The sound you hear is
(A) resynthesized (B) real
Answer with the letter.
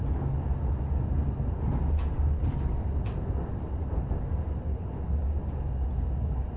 B